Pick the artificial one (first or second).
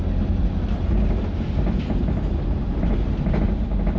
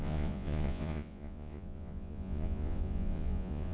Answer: second